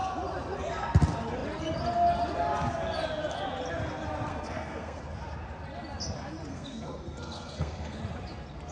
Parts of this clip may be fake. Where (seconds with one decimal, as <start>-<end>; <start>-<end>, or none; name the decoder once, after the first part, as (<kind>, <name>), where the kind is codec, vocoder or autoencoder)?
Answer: 4.3-5.0 (codec, SNAC); 6.5-8.0